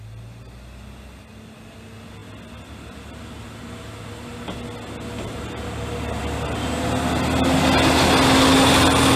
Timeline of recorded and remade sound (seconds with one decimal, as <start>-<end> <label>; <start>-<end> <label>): 0.0-9.2 recorded

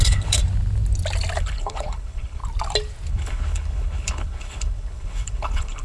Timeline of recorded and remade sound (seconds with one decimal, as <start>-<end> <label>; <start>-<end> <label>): 0.0-0.4 remade; 0.4-1.4 recorded; 1.4-2.4 remade; 2.4-3.1 recorded; 3.1-5.8 remade

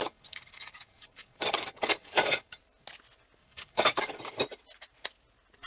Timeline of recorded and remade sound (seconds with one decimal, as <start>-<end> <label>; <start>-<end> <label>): 0.0-2.6 remade; 2.6-3.4 recorded; 3.4-4.2 remade; 4.2-5.7 recorded

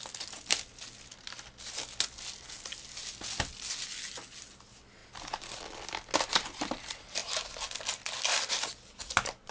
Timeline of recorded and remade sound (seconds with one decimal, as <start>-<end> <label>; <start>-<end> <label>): 0.0-9.5 recorded